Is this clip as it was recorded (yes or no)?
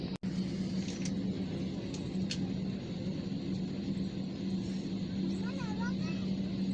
yes